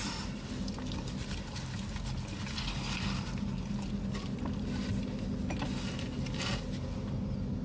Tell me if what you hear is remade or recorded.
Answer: recorded